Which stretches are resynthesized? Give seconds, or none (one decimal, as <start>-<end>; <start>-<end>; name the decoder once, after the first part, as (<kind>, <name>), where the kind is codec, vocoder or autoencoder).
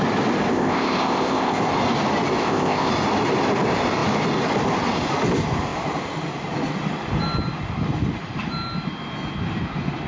0.5-1.6 (codec, ZipCodec); 2.4-2.9